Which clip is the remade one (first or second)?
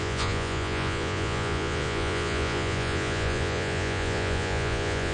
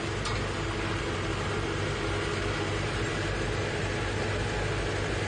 first